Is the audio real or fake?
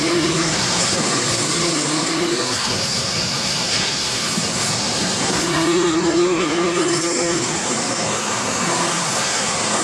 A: fake